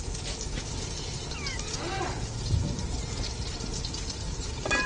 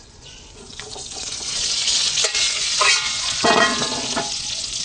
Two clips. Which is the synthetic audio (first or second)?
second